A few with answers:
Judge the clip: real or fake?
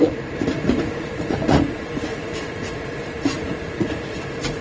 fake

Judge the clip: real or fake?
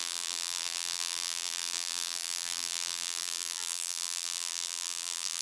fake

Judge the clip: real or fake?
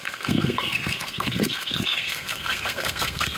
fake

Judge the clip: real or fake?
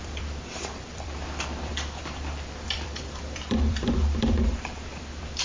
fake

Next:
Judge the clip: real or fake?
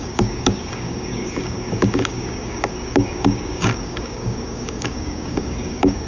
fake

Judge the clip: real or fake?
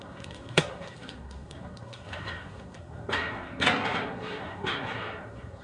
fake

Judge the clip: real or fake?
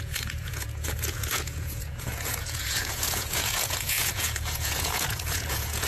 fake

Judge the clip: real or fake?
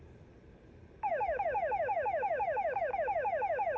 real